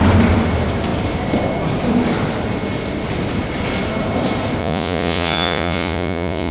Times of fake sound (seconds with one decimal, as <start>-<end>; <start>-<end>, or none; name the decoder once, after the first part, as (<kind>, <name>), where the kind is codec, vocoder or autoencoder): 4.6-6.5 (vocoder, Vocos)